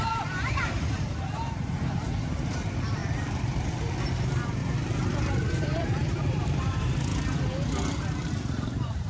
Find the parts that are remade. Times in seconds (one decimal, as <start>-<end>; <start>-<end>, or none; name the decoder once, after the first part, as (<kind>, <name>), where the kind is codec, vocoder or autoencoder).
0.0-4.6 (vocoder, BigVGAN v2); 5.6-7.1; 8.3-9.1